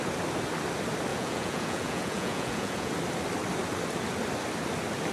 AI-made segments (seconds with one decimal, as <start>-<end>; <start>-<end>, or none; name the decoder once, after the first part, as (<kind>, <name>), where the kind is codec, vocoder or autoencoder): 1.1-2.9 (vocoder, Vocos)